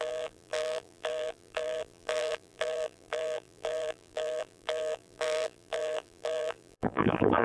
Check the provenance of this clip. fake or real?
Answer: fake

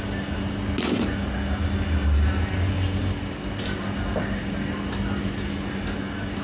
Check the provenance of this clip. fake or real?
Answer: real